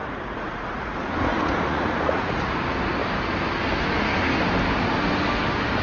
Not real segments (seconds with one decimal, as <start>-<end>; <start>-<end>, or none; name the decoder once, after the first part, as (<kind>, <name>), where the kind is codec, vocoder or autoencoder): 0.0-0.9 (vocoder, Vocos); 1.3-2.6